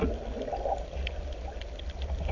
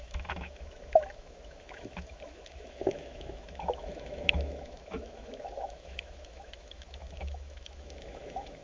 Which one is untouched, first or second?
first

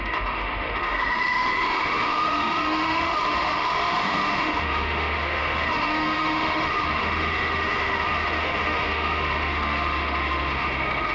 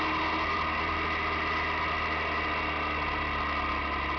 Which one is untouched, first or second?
second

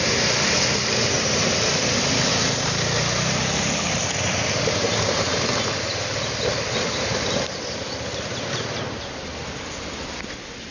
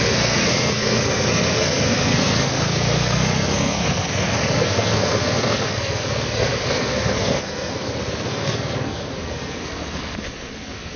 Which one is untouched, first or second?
first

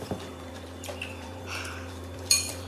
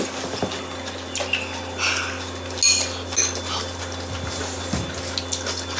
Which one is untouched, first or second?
second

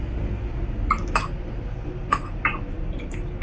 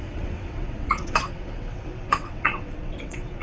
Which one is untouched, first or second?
first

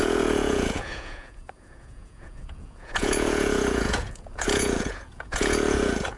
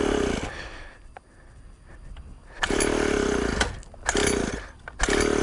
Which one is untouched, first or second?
second